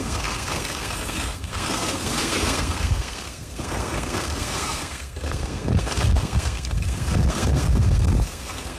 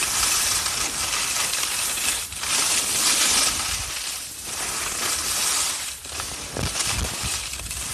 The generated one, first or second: first